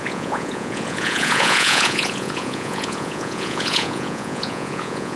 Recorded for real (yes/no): no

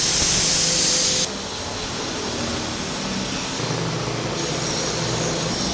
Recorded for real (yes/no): yes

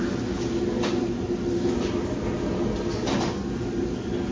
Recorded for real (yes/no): yes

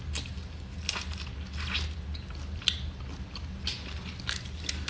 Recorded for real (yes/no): yes